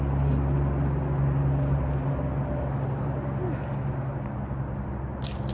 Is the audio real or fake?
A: real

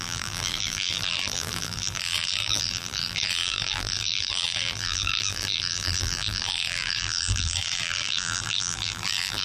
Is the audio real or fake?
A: fake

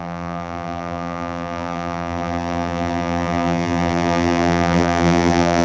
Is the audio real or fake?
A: fake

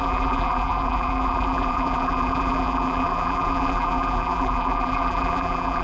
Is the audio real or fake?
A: fake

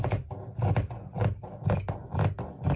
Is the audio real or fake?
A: real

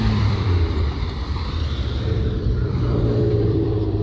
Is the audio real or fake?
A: fake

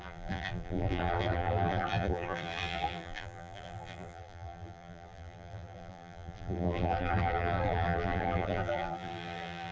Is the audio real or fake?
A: fake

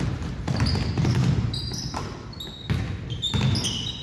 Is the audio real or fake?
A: real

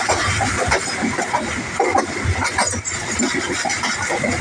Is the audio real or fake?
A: fake